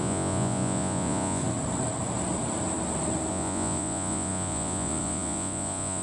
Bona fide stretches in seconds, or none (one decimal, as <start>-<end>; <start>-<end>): 1.4-3.3